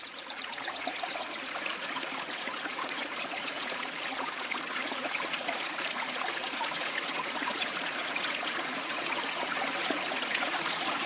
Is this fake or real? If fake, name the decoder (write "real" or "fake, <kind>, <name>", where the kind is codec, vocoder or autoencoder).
fake, vocoder, Vocos